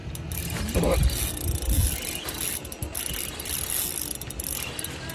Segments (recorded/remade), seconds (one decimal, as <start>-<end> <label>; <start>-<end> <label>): 0.0-0.6 remade; 0.6-5.1 recorded